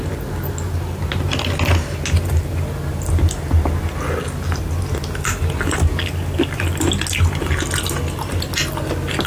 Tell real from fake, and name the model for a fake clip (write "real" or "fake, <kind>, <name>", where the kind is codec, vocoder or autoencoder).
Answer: real